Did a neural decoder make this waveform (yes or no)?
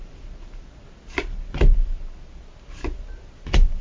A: no